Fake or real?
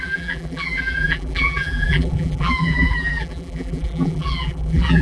fake